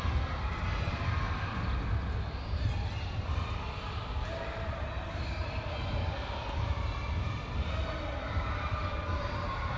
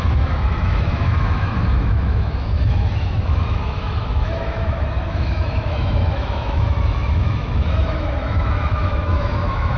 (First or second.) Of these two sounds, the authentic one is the first